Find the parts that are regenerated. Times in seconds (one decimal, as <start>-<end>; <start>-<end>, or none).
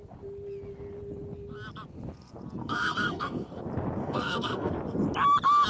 2.6-3.6; 4.0-4.7